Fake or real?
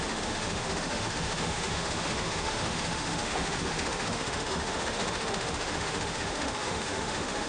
fake